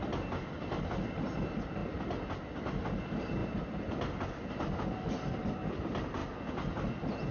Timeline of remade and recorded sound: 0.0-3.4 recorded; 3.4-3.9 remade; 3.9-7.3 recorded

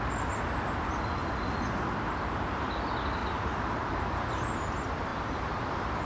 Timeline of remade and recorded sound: 0.0-3.2 recorded; 3.2-3.9 remade; 3.9-6.1 recorded

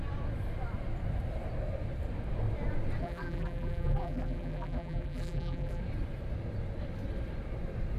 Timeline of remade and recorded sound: 0.0-3.0 recorded; 3.0-5.8 remade; 5.8-8.0 recorded

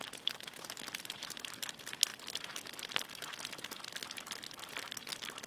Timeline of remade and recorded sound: 0.0-5.5 remade

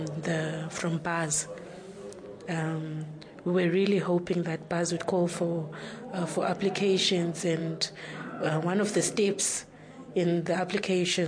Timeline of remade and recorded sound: 0.0-11.3 recorded

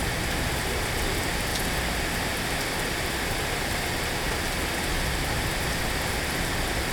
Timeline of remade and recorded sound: 0.0-6.9 recorded